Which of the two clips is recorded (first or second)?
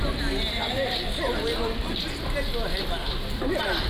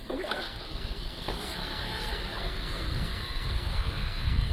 first